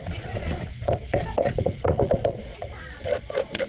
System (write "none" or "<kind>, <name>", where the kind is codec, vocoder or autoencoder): vocoder, Vocos